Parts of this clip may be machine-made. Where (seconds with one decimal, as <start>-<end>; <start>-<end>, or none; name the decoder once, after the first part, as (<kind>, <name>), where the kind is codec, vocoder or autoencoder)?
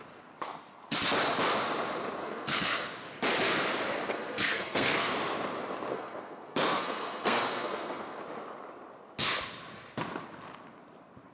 2.2-2.9 (codec, SNAC); 4.1-5.1; 5.9-8.2